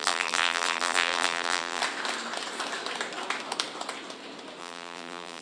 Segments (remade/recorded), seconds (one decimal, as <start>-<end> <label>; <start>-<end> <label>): 0.0-1.8 remade; 1.8-4.6 recorded; 4.6-5.4 remade